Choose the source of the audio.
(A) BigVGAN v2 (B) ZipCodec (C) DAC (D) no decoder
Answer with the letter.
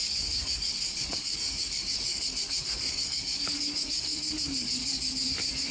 C